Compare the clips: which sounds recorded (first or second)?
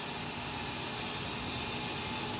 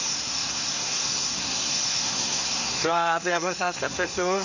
first